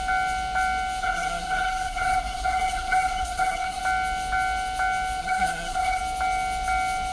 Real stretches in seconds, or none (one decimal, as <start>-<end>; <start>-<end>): 0.0-1.0; 3.8-5.2; 6.0-7.1